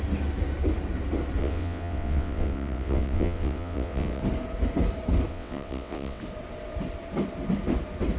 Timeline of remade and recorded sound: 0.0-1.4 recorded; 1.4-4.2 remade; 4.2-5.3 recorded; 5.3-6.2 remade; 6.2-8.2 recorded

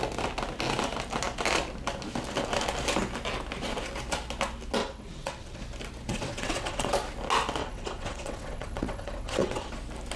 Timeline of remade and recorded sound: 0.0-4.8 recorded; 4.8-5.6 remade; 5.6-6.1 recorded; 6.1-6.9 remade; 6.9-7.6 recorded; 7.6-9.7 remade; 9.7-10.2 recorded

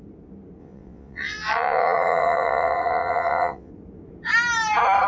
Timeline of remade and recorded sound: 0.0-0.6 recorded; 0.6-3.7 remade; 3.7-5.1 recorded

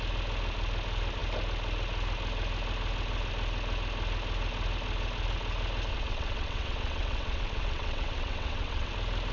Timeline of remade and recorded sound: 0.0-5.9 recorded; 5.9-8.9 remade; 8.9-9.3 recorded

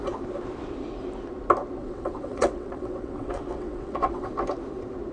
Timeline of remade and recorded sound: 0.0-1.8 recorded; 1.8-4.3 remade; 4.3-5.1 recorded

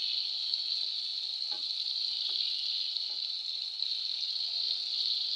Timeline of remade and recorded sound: 0.0-5.4 recorded

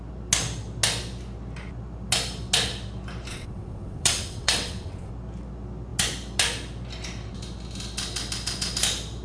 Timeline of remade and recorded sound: 0.0-3.3 recorded; 3.3-5.1 remade; 5.1-9.2 recorded